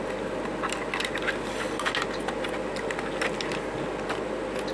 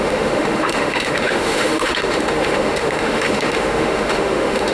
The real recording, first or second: first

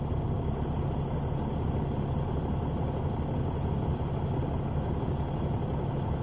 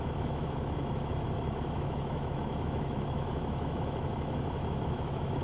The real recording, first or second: first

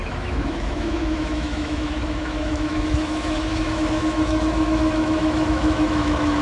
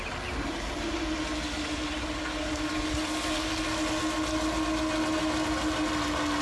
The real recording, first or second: second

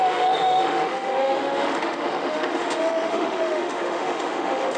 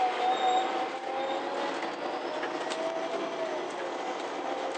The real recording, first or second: second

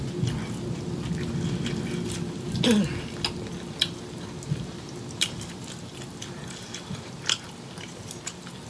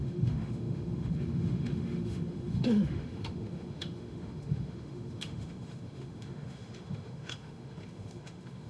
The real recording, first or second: first